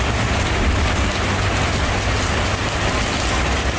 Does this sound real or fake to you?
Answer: real